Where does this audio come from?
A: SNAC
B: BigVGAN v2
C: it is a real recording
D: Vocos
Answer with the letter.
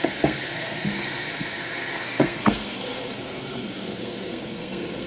A